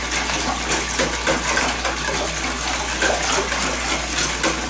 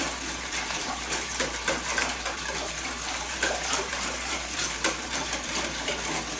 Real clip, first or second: first